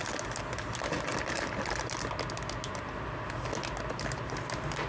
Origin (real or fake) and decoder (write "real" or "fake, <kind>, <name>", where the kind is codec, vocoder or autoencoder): real